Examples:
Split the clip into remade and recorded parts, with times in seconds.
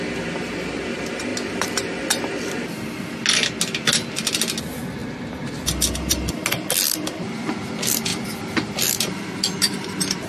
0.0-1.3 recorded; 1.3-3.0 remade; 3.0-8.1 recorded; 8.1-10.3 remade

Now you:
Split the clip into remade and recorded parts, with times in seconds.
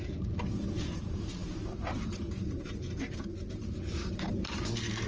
0.0-5.1 remade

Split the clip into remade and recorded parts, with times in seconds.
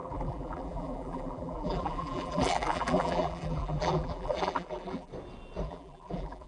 0.0-5.1 remade; 5.1-5.6 recorded; 5.6-6.5 remade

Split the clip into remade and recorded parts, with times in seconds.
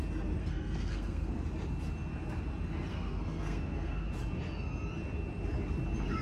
0.0-0.4 recorded; 0.4-1.3 remade; 1.3-2.9 recorded; 2.9-4.1 remade; 4.1-6.2 recorded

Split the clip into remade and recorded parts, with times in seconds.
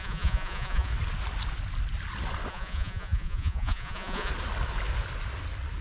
0.0-0.9 remade; 0.9-2.5 recorded; 2.5-4.3 remade; 4.3-5.8 recorded